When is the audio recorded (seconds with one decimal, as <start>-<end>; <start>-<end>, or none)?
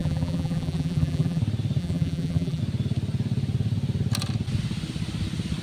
1.4-1.8; 2.6-5.6